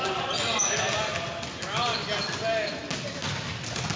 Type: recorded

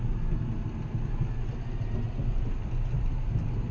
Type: recorded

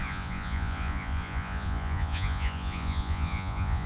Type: remade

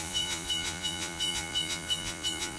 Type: remade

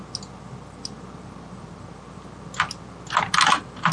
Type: recorded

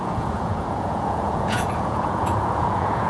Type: remade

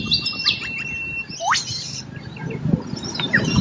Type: recorded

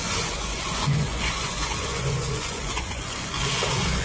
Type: remade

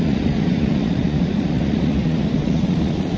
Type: remade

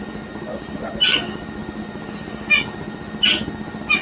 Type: recorded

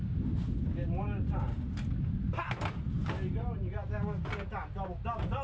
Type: recorded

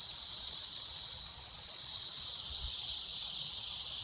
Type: remade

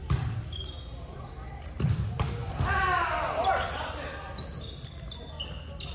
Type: recorded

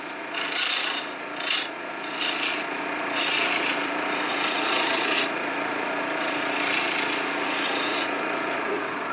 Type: remade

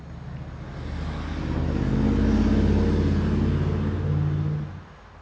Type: recorded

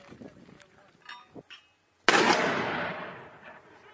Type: recorded